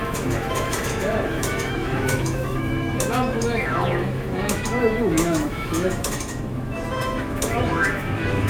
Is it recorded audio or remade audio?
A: remade